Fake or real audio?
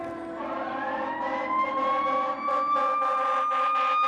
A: real